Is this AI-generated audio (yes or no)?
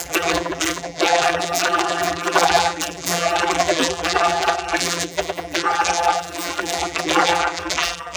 yes